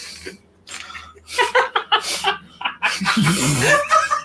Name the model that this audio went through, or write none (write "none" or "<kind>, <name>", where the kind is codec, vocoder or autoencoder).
none